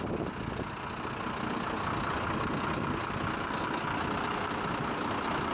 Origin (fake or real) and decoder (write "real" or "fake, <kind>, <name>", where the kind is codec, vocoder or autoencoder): real